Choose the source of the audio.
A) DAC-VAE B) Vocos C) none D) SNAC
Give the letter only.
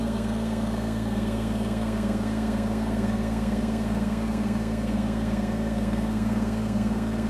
D